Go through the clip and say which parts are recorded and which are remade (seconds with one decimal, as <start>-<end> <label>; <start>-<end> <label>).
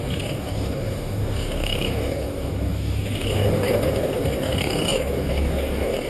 0.0-6.1 remade